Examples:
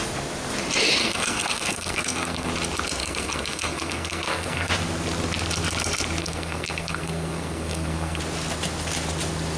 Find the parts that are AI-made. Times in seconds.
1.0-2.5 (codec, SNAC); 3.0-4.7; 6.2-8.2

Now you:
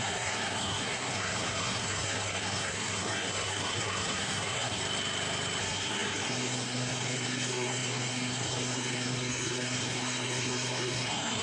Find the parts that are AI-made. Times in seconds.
0.0-4.8 (codec, SNAC); 5.6-11.4

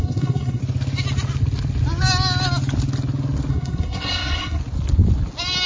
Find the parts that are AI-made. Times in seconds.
0.0-0.6 (codec, SNAC); 3.5-4.6

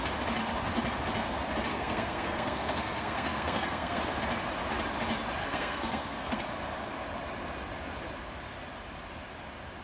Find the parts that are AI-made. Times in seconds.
1.7-4.0 (codec, SNAC); 5.4-6.4